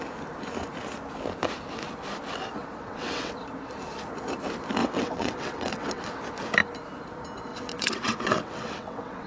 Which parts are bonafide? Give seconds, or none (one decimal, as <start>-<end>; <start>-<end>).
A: 0.0-2.6; 3.3-4.8; 6.1-7.5